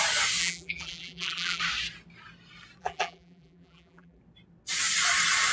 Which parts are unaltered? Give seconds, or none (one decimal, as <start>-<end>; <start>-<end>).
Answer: 0.0-0.4; 1.6-2.8; 4.2-5.5